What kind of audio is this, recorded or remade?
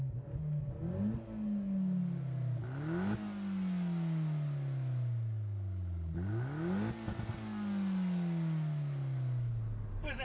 recorded